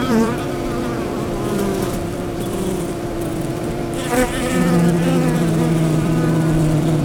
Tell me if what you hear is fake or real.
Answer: fake